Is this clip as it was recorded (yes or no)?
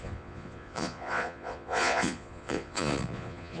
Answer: no